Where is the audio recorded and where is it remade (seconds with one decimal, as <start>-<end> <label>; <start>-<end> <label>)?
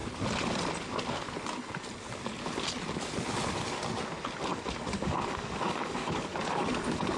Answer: 0.0-4.5 recorded; 4.5-7.2 remade